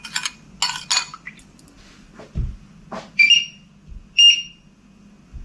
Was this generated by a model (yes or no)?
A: no